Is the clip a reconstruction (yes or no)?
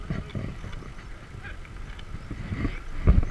no